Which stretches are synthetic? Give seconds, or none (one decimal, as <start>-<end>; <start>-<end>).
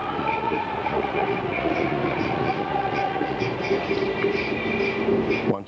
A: 0.0-3.4